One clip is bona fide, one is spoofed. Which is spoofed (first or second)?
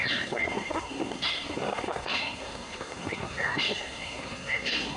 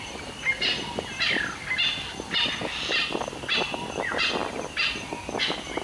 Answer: first